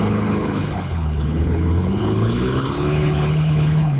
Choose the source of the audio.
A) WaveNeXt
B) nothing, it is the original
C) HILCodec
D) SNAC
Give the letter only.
C